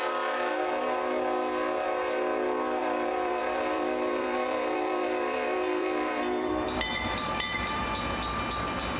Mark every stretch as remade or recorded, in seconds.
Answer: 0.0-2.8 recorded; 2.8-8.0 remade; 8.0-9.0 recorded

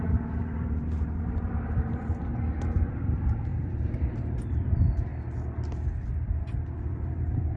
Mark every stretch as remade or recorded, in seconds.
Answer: 0.0-2.3 remade; 2.3-2.9 recorded; 2.9-5.1 remade; 5.1-6.9 recorded; 6.9-7.6 remade

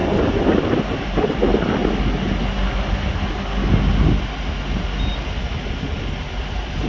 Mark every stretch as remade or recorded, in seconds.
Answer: 0.0-1.8 remade; 1.8-5.4 recorded; 5.4-6.9 remade